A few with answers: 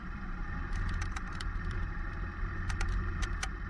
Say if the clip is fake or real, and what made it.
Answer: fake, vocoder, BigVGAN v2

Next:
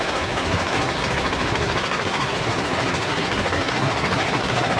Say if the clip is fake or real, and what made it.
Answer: fake, codec, SNAC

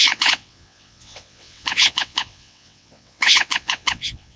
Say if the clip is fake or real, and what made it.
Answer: fake, vocoder, WaveNeXt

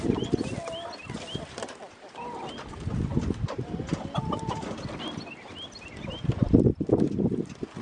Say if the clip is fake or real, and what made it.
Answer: real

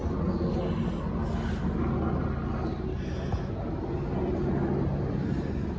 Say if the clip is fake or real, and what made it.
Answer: real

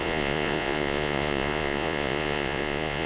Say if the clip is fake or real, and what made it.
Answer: fake, vocoder, Vocos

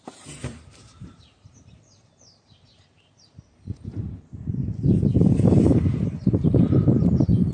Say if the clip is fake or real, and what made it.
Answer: fake, vocoder, BigVGAN v2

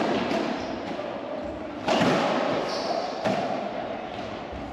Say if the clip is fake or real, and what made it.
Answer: fake, vocoder, BigVGAN v2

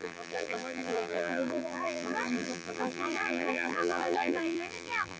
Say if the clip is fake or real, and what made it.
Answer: fake, vocoder, BigVGAN v2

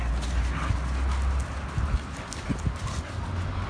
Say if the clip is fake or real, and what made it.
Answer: real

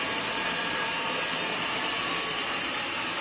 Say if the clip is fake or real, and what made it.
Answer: fake, vocoder, BigVGAN v2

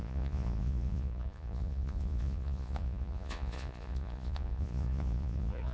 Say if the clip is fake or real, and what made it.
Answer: fake, vocoder, Vocos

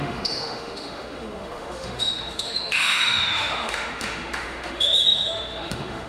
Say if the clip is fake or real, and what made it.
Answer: fake, autoencoder, DAC-VAE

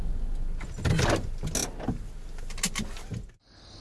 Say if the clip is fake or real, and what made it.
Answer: real